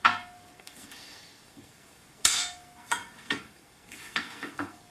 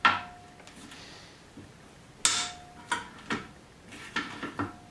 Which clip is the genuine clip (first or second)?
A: second